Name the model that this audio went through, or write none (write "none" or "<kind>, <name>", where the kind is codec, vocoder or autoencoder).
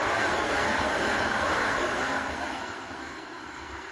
codec, SNAC